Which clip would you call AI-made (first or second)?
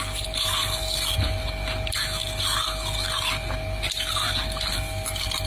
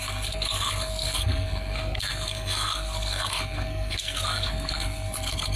second